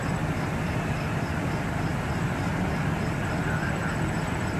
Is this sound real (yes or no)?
yes